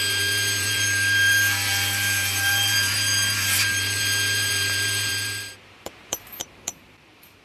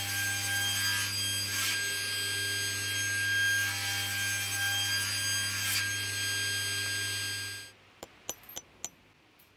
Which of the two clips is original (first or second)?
second